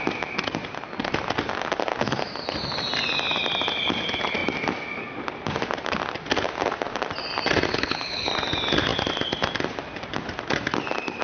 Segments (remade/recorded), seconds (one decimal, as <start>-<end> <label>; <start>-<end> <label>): 0.0-7.7 recorded; 7.7-8.3 remade; 8.3-11.2 recorded